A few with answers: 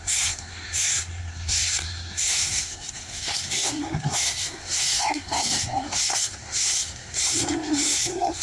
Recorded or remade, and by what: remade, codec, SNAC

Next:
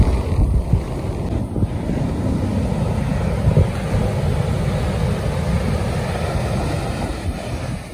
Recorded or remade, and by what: recorded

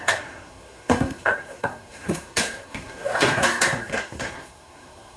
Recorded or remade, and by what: remade, codec, SNAC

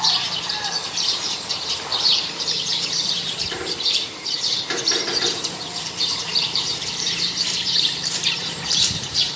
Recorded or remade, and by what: remade, vocoder, BigVGAN v2